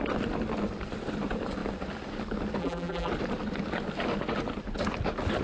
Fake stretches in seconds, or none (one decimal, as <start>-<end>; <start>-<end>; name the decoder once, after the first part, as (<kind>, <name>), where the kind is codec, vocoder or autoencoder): 2.6-3.1 (vocoder, BigVGAN v2)